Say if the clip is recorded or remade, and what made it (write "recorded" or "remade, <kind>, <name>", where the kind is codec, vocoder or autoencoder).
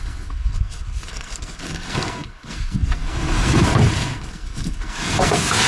remade, codec, SNAC